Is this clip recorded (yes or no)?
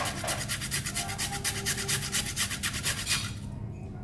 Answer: yes